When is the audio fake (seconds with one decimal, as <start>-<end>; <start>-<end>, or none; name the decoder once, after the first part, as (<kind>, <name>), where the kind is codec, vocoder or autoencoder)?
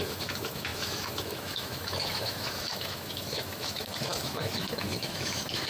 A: 0.0-5.7 (autoencoder, DAC-VAE)